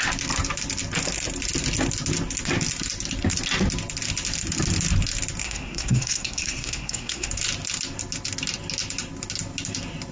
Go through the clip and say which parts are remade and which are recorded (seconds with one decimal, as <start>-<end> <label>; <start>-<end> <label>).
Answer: 0.0-5.4 recorded; 5.4-7.3 remade; 7.3-10.1 recorded